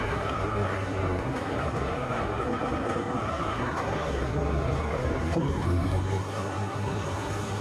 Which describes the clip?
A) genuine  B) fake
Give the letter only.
B